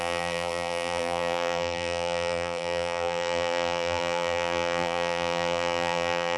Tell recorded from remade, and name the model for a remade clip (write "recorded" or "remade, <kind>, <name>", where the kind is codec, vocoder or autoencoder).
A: remade, vocoder, BigVGAN v2